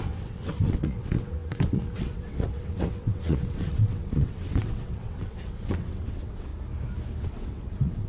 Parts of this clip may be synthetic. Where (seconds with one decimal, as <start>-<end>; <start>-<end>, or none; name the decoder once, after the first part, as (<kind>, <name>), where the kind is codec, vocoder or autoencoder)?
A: 0.0-6.5 (vocoder, WaveNeXt); 7.2-8.1